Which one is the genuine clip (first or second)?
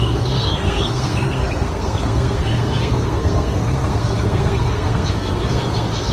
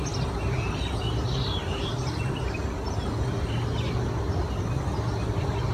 second